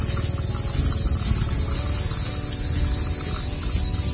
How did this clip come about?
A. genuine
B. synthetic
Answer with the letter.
A